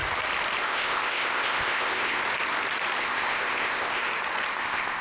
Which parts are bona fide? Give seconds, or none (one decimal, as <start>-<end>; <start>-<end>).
0.0-0.6; 2.2-3.0; 4.0-4.6